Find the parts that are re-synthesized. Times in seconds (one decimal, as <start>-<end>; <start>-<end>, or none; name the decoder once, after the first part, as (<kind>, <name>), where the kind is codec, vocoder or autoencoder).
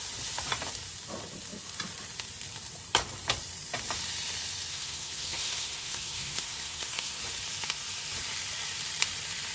4.7-7.2 (codec, SNAC)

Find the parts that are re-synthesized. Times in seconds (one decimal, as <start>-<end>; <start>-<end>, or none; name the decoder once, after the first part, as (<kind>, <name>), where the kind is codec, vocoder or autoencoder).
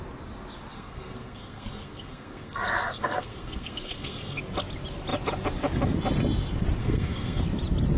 0.7-4.4 (codec, SNAC); 6.8-7.4